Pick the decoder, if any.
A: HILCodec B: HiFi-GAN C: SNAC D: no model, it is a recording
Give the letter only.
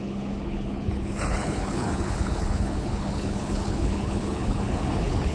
A